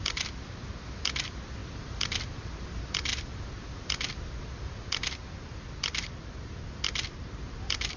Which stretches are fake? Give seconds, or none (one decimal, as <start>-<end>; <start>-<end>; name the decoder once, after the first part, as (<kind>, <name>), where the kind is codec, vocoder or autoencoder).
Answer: none